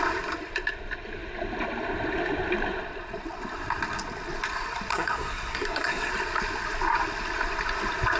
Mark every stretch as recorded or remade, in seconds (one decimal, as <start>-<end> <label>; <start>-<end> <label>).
0.0-4.9 recorded; 4.9-6.1 remade; 6.1-8.2 recorded